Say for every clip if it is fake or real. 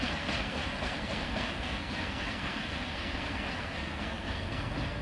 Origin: fake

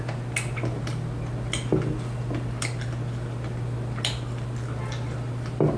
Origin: real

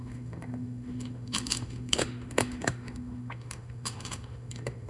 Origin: fake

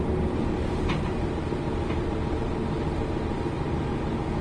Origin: real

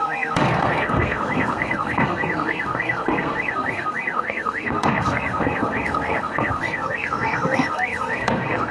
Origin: fake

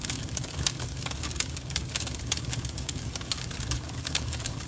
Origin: fake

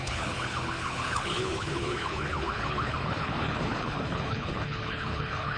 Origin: fake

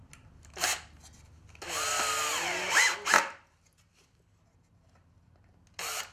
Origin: real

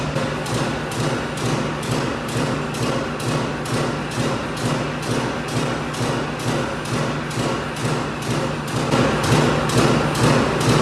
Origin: real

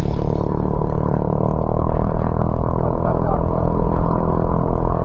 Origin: fake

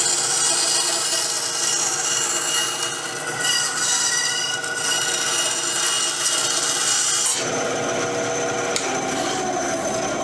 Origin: real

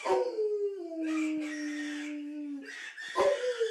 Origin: real